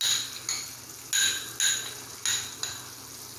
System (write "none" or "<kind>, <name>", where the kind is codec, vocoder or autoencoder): none